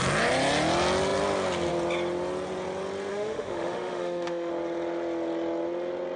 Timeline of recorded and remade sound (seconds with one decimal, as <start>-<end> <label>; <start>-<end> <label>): 0.0-3.1 recorded; 3.1-4.5 remade; 4.5-6.2 recorded